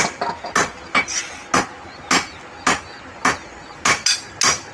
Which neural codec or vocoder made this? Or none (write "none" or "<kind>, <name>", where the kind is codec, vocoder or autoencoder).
none